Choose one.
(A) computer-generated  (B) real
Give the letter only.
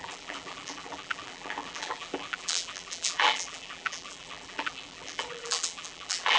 A